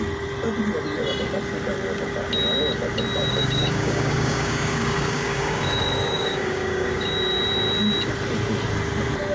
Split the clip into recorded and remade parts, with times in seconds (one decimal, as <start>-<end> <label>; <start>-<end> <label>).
0.0-3.3 recorded; 3.3-7.1 remade; 7.1-9.3 recorded